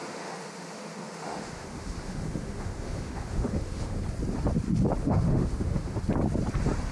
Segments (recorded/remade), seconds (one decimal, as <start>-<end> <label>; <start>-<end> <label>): 0.0-4.0 remade; 4.0-5.0 recorded; 5.0-6.0 remade; 6.0-6.9 recorded